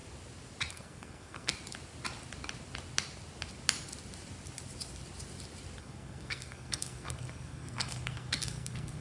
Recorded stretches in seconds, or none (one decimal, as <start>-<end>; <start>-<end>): 0.0-0.7; 1.5-5.8